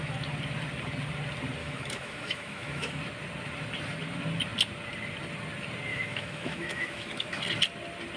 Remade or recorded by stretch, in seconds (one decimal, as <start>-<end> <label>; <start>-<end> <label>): 0.0-1.6 recorded; 1.6-3.0 remade; 3.0-5.9 recorded; 5.9-7.4 remade; 7.4-8.2 recorded